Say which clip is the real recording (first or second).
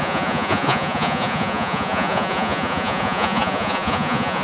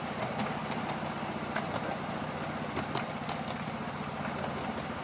second